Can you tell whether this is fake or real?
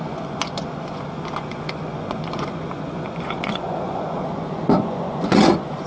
fake